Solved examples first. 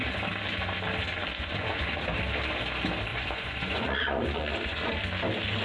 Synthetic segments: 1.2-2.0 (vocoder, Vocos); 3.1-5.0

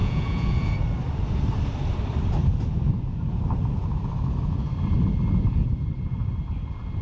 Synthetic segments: 0.0-0.7 (vocoder, Vocos)

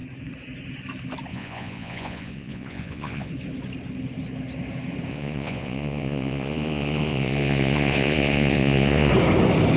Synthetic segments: 1.3-3.3 (vocoder, Vocos); 5.1-9.1

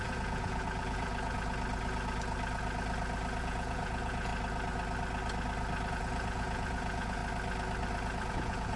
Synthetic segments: 0.0-1.1 (vocoder, Vocos); 3.4-4.3; 5.9-7.2; 8.3-8.8

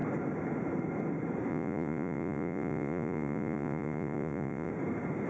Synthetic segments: 1.5-4.7 (vocoder, Vocos)

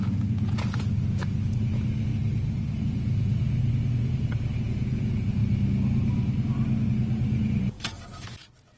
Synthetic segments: 0.0-2.1 (vocoder, Vocos); 2.8-5.4; 6.9-8.8